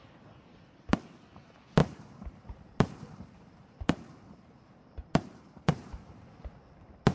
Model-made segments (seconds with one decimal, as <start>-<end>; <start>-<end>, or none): 1.8-6.1